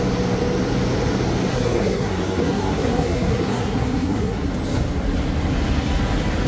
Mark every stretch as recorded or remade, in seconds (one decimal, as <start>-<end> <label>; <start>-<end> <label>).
0.0-1.5 recorded; 1.5-4.5 remade; 4.5-6.5 recorded